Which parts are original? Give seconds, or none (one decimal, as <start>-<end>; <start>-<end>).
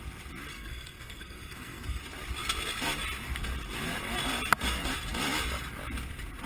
0.0-0.5; 2.0-6.5